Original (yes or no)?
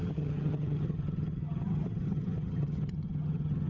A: no